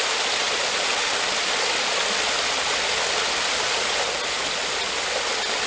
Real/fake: real